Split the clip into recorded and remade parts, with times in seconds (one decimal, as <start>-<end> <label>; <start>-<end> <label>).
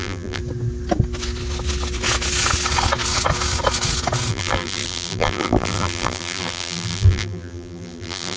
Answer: 0.0-0.4 remade; 0.4-4.3 recorded; 4.3-8.4 remade